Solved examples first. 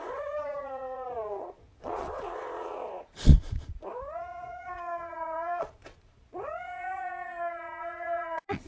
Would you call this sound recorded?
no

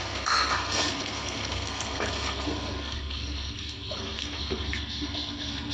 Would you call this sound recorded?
no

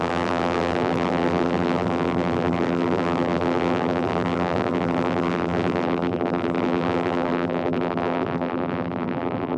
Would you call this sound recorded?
no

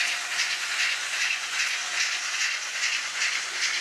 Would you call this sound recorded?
no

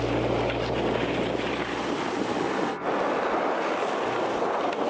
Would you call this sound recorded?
yes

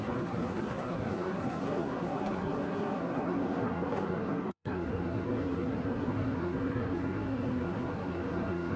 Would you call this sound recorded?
no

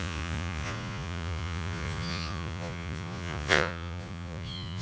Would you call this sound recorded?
no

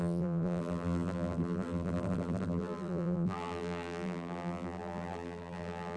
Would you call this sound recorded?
no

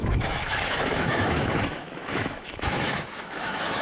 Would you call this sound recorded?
no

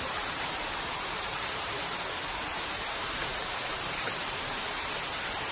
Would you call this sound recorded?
no